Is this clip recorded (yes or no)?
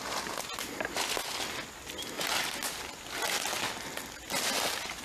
yes